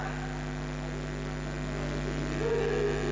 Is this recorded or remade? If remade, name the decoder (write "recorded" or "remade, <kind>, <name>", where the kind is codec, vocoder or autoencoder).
recorded